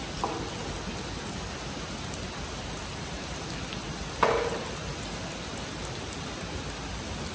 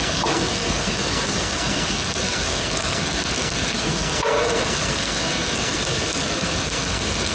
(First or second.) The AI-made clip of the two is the second